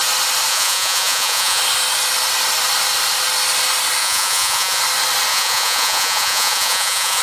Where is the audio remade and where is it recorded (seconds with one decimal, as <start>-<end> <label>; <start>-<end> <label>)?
0.0-0.5 recorded; 0.5-1.6 remade; 1.6-4.0 recorded; 4.0-4.8 remade; 4.8-5.3 recorded; 5.3-7.2 remade